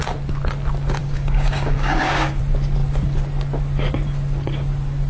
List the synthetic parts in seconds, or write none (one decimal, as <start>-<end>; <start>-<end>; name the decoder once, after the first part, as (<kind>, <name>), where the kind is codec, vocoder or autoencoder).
1.0-2.4 (codec, DAC)